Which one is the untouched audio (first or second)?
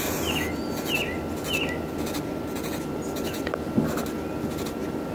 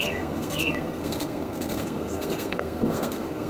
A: first